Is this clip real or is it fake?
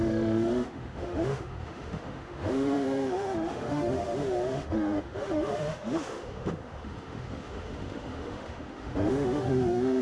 fake